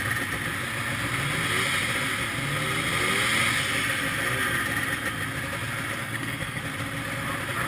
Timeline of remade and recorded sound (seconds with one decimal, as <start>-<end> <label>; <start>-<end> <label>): 0.0-6.0 recorded; 6.0-6.6 remade; 6.6-7.7 recorded